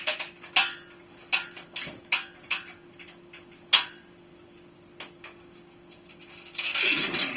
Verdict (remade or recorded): recorded